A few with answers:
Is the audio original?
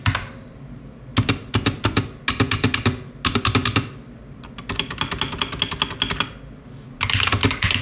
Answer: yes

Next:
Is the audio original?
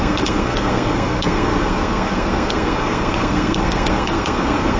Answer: no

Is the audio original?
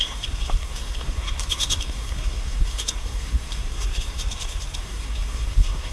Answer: no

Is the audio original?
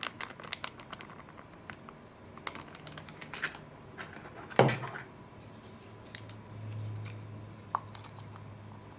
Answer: yes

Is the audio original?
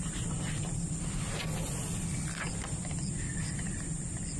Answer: yes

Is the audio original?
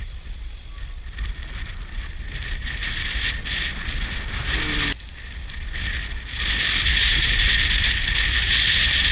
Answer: yes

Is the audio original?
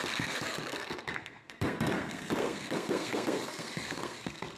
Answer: no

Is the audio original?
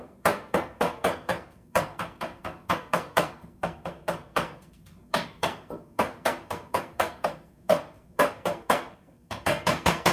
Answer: no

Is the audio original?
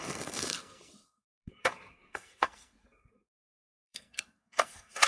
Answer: no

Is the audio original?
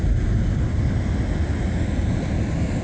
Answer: yes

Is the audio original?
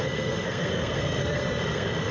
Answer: no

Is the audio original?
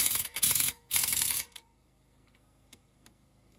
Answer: no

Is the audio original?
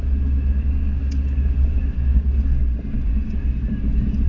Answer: yes